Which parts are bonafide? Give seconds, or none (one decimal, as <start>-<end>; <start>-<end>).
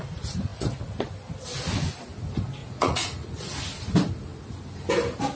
0.0-2.6; 3.6-5.4